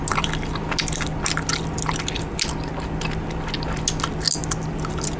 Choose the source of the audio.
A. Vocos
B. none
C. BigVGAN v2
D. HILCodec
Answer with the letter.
B